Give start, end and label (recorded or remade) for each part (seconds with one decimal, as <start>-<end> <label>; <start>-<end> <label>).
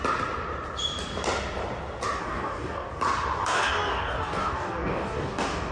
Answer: 0.0-2.2 recorded; 2.2-2.9 remade; 2.9-3.4 recorded; 3.4-5.7 remade